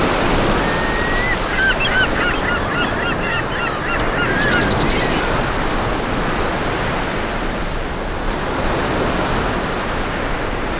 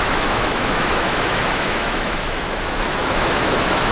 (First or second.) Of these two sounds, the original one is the first